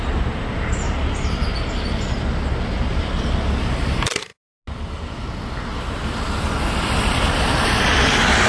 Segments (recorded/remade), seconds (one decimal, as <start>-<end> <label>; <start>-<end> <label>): 0.0-1.5 remade; 1.5-2.9 recorded; 2.9-4.3 remade; 4.3-5.6 recorded; 5.6-8.5 remade

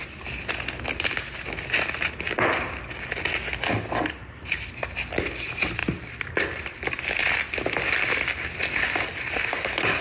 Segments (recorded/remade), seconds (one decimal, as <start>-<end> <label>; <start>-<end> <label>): 0.0-5.8 recorded; 5.8-7.3 remade; 7.3-10.0 recorded

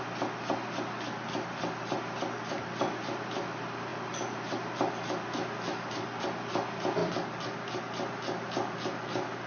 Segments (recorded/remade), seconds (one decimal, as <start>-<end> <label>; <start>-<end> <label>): 0.0-9.5 recorded